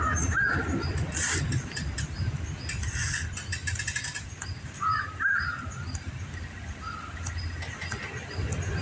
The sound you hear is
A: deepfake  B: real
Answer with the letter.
B